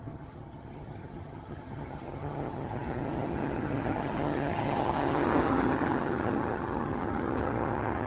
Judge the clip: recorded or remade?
remade